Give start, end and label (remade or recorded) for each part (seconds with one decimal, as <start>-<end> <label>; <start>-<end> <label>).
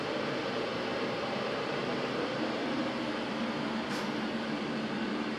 0.0-2.6 remade; 2.6-4.7 recorded; 4.7-5.4 remade